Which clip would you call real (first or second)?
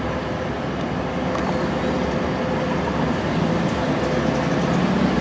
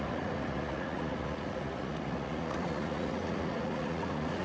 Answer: first